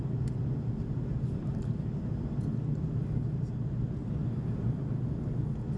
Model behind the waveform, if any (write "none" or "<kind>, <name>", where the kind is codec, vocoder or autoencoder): none